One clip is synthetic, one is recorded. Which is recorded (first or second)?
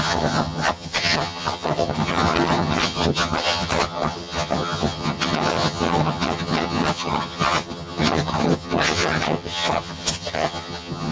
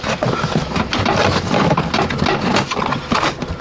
second